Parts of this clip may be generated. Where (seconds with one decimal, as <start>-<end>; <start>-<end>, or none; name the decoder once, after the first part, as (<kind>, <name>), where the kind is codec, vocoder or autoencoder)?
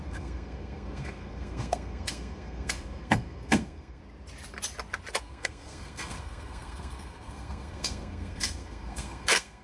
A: 0.0-4.0 (codec, SNAC); 5.2-9.6